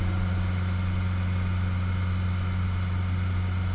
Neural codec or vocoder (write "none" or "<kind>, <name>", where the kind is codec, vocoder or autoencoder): none